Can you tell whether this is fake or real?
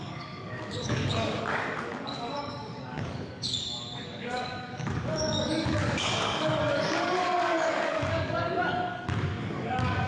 fake